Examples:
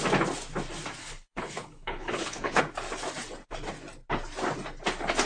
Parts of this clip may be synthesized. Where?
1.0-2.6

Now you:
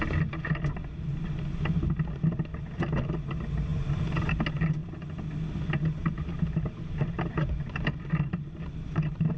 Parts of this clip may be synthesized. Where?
3.7-4.3; 6.0-9.4

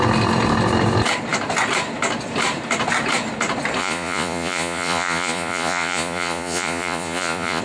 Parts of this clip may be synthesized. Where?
3.8-7.6